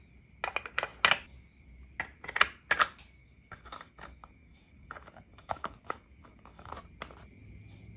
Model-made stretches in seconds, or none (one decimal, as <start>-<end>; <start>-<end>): 3.2-6.7